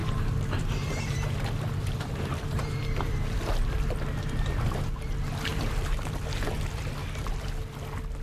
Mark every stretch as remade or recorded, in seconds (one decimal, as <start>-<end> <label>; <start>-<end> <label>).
0.0-3.4 remade; 3.4-5.5 recorded; 5.5-6.2 remade; 6.2-8.2 recorded